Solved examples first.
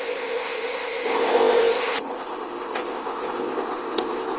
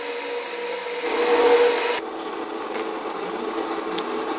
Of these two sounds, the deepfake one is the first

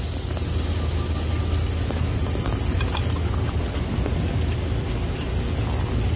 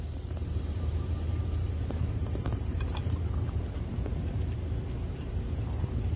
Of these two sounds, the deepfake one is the second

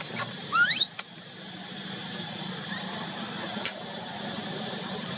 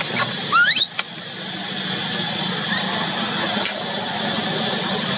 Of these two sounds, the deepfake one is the first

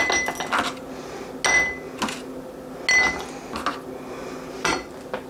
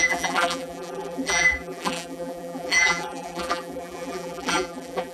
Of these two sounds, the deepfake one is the second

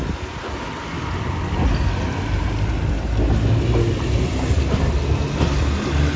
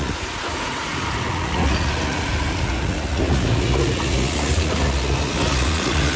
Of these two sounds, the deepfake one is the second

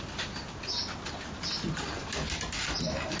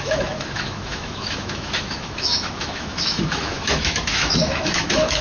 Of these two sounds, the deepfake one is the second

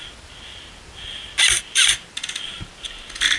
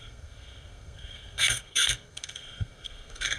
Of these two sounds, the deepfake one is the second